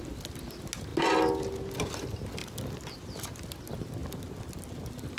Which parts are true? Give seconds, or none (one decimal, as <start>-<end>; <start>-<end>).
0.0-5.2